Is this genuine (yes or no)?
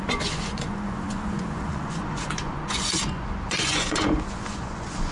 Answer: no